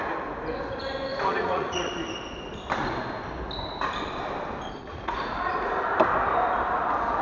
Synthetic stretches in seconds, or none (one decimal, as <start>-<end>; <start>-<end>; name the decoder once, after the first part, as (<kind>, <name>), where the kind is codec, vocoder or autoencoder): 1.1-1.9 (vocoder, Vocos); 4.8-5.7